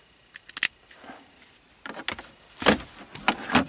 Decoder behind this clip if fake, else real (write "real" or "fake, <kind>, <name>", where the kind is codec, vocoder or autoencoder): real